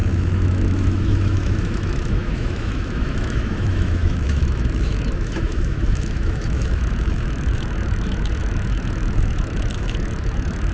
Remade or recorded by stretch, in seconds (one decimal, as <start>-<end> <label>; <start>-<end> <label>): 0.0-10.7 remade